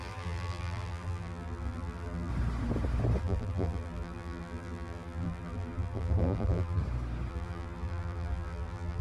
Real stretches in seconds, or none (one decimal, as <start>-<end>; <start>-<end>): 2.3-3.2; 6.8-7.3